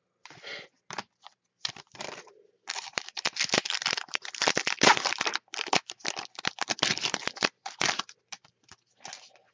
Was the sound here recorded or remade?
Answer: remade